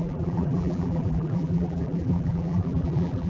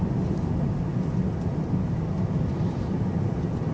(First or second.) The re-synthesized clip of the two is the first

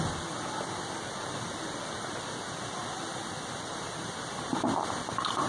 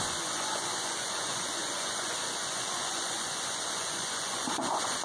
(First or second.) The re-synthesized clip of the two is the second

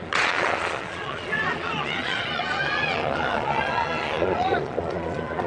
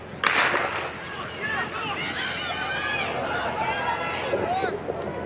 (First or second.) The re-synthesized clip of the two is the first